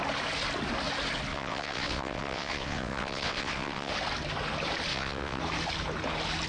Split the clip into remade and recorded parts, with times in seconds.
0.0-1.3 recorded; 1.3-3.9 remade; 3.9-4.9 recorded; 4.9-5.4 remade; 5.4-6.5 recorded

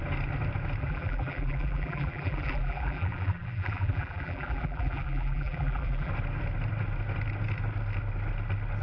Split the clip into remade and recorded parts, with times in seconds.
0.0-0.8 recorded; 0.8-6.1 remade; 6.1-8.8 recorded

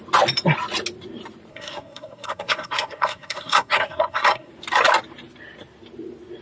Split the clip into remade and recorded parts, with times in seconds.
0.0-1.5 recorded; 1.5-4.5 remade; 4.5-6.4 recorded

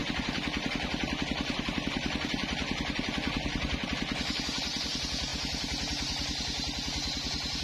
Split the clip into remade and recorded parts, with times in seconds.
0.0-4.6 remade; 4.6-7.6 recorded

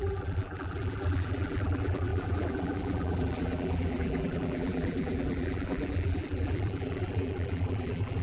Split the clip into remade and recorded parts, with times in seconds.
0.0-8.2 remade

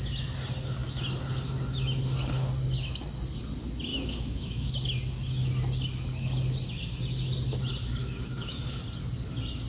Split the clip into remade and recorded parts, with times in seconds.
0.0-3.9 recorded; 3.9-4.7 remade; 4.7-8.0 recorded; 8.0-8.6 remade; 8.6-9.7 recorded

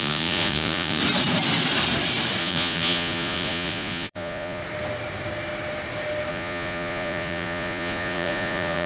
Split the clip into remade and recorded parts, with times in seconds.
0.0-1.0 remade; 1.0-2.4 recorded; 2.4-4.6 remade; 4.6-6.3 recorded; 6.3-8.9 remade